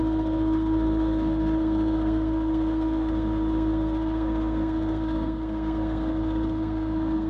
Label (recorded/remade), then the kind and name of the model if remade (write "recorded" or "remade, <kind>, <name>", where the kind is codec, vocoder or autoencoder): remade, codec, SNAC